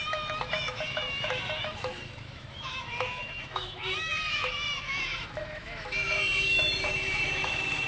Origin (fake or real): fake